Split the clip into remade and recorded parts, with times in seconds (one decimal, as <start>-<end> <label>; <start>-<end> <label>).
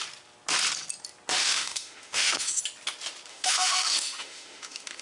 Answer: 0.0-1.4 recorded; 1.4-2.6 remade; 2.6-3.3 recorded; 3.3-5.0 remade